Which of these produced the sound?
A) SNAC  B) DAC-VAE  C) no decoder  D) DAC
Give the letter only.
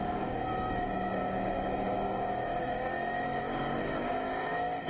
D